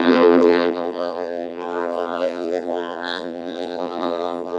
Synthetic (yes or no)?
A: yes